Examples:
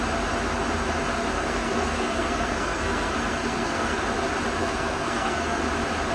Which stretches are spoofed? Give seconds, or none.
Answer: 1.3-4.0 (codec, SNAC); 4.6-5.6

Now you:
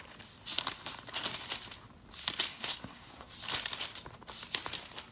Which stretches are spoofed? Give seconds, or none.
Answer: 2.5-3.3 (codec, SNAC)

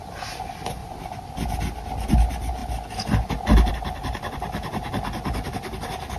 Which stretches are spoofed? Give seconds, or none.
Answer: none

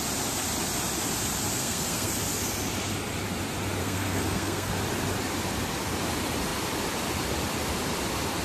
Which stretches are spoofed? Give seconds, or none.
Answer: 1.6-2.1 (codec, SNAC); 3.8-4.7

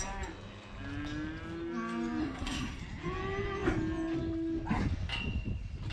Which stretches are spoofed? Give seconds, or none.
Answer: 2.2-2.8 (codec, SNAC)